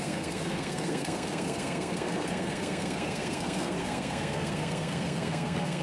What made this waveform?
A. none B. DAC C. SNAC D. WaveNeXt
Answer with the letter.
C